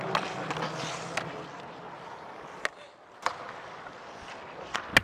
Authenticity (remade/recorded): recorded